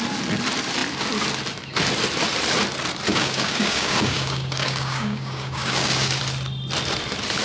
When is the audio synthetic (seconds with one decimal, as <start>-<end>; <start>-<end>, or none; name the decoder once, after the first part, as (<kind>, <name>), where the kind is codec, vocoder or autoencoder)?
3.1-6.2 (codec, DAC)